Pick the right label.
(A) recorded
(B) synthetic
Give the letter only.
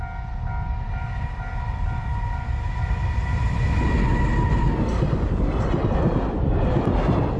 A